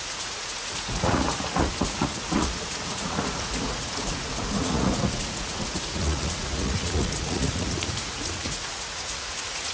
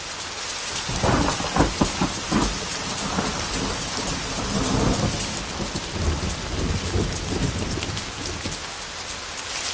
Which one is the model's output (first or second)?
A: first